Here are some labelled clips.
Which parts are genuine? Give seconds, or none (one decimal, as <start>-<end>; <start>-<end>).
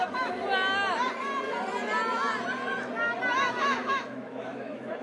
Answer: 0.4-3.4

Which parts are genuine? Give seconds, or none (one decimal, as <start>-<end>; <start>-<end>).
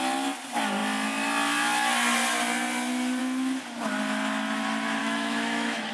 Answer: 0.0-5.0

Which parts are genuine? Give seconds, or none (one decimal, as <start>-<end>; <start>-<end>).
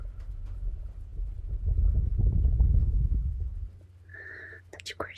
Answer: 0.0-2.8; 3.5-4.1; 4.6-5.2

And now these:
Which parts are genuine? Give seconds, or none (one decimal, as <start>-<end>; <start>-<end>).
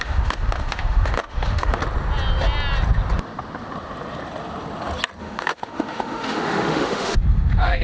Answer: 1.8-5.2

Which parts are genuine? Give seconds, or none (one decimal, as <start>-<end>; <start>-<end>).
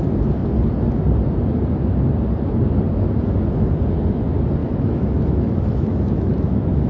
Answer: 0.0-4.6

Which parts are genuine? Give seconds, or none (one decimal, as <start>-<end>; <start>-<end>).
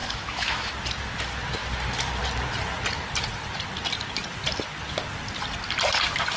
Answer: 0.7-6.4